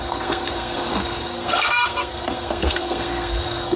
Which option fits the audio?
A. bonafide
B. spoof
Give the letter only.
B